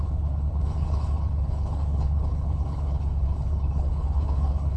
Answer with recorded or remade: remade